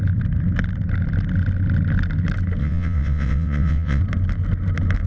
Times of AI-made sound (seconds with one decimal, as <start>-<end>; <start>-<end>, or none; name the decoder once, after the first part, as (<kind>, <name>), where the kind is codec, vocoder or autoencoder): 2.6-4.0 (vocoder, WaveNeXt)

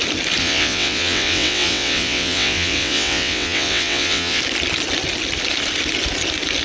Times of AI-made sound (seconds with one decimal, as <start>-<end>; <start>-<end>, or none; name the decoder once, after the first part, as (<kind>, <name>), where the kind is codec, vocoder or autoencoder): 0.4-4.4 (vocoder, WaveNeXt)

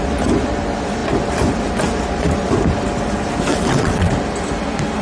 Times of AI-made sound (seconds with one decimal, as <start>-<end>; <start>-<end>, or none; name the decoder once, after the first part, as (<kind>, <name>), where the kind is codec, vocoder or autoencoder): 3.5-4.1 (vocoder, WaveNeXt)

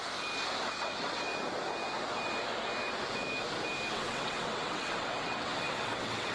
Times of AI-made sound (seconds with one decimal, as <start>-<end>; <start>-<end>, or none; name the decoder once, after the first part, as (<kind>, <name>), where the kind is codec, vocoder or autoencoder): 0.7-1.3 (vocoder, WaveNeXt); 3.9-6.3

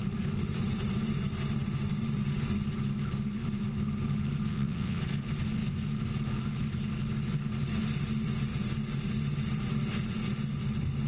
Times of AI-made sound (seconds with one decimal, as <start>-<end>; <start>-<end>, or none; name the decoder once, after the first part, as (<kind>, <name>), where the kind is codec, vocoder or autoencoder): 4.5-5.0 (vocoder, WaveNeXt)

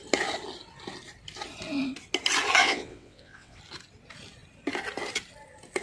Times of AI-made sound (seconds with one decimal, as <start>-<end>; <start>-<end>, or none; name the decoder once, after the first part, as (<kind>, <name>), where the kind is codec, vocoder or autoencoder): 2.6-3.6 (vocoder, WaveNeXt)